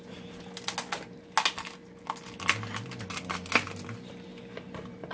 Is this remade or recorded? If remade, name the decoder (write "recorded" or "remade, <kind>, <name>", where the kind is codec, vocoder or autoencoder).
recorded